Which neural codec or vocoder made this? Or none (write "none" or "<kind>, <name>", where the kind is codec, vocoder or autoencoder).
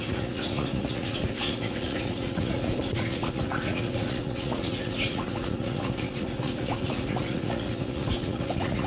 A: vocoder, Vocos